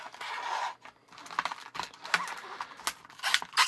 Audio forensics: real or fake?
real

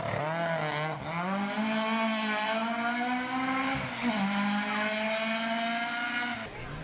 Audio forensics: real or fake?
real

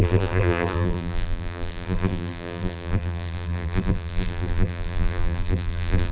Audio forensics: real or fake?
fake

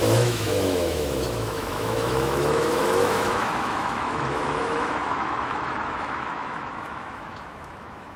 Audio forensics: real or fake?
fake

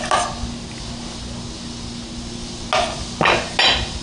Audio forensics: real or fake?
real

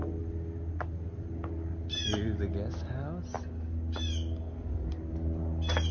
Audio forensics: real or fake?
real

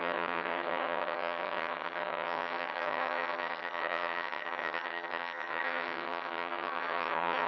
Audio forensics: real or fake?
fake